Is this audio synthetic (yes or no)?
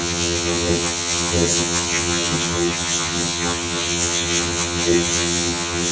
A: yes